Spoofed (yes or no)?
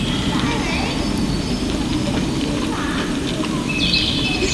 no